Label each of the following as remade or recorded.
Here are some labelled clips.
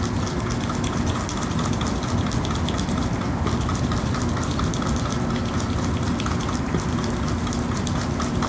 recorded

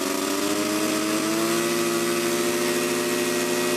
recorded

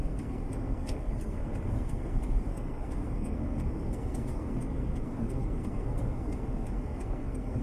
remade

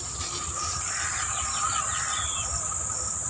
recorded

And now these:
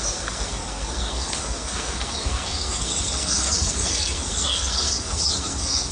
remade